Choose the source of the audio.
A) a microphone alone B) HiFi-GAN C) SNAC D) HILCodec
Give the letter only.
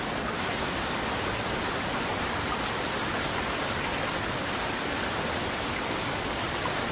A